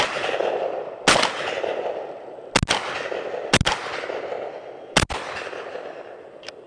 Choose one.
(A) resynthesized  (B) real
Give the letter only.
B